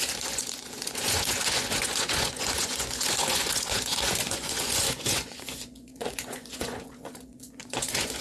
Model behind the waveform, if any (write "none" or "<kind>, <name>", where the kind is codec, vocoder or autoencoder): vocoder, Vocos